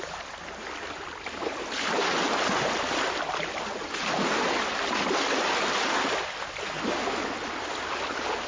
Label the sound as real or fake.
real